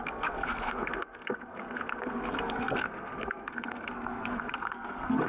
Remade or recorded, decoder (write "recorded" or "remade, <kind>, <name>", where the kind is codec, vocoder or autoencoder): remade, codec, SNAC